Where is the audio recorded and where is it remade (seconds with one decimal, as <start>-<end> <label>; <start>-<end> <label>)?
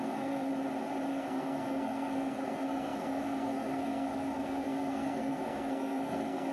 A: 0.0-0.5 remade; 0.5-1.1 recorded; 1.1-6.5 remade